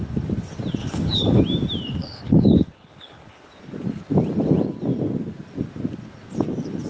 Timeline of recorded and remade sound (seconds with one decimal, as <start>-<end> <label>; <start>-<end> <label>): 0.0-0.8 recorded; 0.8-1.4 remade; 1.4-2.0 recorded; 2.0-3.5 remade; 3.5-6.9 recorded